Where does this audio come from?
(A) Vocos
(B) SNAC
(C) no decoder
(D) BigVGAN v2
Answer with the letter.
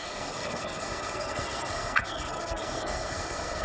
B